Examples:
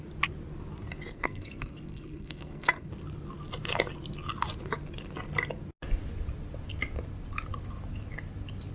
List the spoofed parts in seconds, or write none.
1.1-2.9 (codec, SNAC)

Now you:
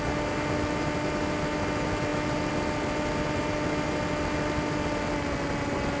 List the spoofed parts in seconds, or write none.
none

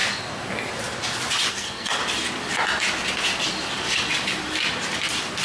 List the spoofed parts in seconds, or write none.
1.5-2.0 (codec, SNAC)

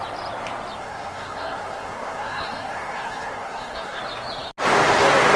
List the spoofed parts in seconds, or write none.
0.8-4.0 (codec, SNAC)

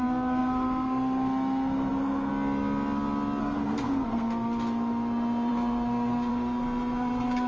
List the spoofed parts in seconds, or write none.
0.0-2.3 (codec, SNAC); 3.4-7.5

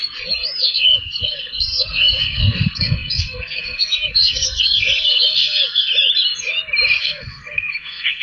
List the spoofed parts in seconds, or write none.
0.6-5.9 (codec, SNAC); 7.0-8.2